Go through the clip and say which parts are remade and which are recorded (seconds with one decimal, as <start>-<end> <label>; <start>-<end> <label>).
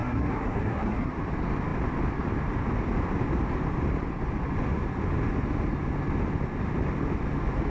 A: 0.0-1.1 remade; 1.1-7.7 recorded